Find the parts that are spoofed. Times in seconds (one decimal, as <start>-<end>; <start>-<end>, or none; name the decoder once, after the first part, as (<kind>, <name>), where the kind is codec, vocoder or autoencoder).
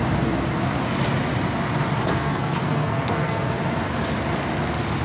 2.0-3.5 (codec, SNAC)